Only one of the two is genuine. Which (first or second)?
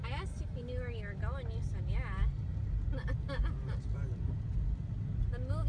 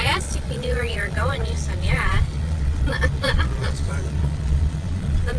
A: first